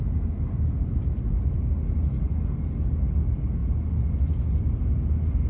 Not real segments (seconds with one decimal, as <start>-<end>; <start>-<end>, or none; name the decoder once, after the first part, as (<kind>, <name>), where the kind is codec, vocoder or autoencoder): none